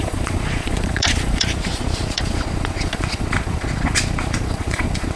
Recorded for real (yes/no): no